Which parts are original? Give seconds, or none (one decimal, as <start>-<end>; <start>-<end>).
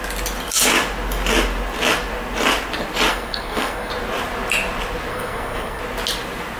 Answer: 0.0-3.1; 3.9-5.1; 5.8-6.6